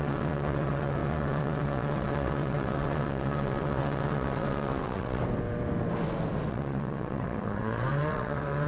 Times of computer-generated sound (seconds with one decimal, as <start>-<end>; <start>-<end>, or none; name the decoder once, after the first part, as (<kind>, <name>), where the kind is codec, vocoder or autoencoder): 0.0-5.2 (vocoder, WaveNeXt); 6.5-8.7